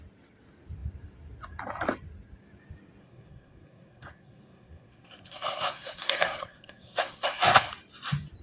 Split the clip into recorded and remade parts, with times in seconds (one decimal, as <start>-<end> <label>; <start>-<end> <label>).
0.0-3.0 recorded; 3.0-7.7 remade; 7.7-8.4 recorded